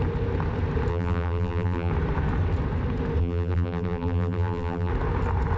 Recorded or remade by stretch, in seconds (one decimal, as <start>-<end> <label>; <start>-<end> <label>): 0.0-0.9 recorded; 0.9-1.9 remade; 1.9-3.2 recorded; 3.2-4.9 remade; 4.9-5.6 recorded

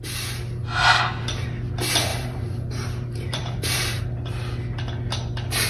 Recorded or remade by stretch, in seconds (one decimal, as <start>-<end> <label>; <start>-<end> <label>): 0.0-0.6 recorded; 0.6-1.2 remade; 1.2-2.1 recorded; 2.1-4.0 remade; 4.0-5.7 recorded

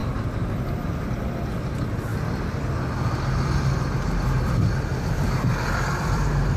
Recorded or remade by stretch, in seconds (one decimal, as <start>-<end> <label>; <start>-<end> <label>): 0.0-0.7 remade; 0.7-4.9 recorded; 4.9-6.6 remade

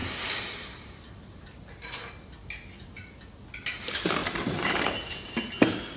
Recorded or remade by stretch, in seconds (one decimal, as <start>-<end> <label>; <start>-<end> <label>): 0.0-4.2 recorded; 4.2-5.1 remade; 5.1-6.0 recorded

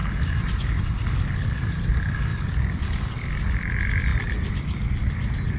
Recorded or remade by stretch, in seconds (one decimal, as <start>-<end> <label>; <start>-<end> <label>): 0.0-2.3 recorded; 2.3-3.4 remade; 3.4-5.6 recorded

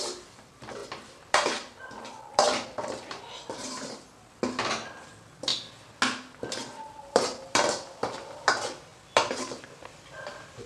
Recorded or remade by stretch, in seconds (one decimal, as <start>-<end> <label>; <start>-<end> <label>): 0.0-5.5 remade; 5.5-6.5 recorded; 6.5-10.7 remade